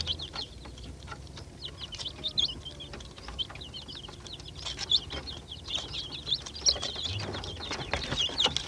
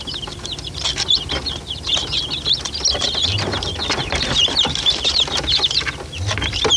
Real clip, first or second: first